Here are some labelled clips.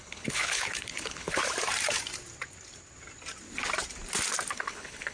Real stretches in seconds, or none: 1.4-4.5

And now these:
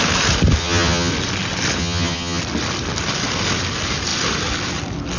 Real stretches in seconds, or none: 0.0-0.6; 1.1-1.8; 2.4-5.2

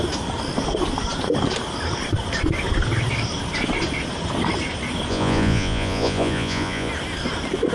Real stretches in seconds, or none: 0.0-5.1; 6.9-7.7

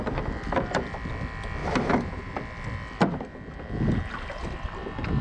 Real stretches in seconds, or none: 0.0-1.6; 2.3-5.2

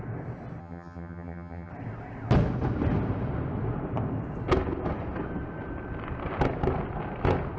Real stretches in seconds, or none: 0.0-0.6; 1.7-7.6